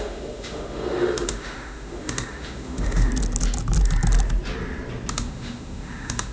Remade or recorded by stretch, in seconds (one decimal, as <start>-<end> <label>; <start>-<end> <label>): 0.0-3.1 remade; 3.1-5.1 recorded; 5.1-6.3 remade